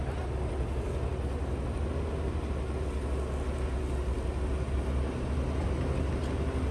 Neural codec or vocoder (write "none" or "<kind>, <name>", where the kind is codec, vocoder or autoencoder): none